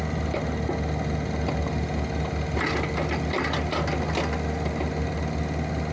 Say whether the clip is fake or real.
real